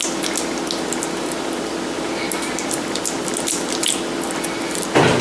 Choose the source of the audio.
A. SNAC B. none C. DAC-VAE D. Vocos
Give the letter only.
B